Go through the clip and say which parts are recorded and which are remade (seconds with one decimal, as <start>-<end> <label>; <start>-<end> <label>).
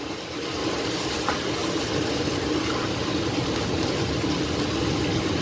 0.0-0.6 recorded; 0.6-1.2 remade; 1.2-1.6 recorded; 1.6-4.8 remade; 4.8-5.4 recorded